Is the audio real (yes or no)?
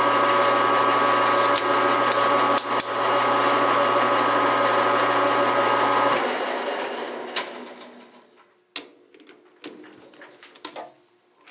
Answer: yes